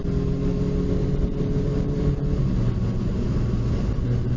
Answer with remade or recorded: recorded